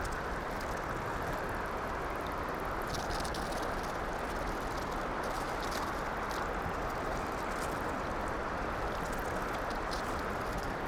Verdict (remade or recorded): recorded